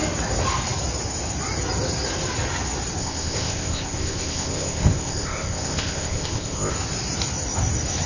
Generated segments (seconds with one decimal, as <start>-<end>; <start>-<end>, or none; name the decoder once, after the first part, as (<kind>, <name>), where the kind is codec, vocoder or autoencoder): 3.0-6.7 (codec, ZipCodec)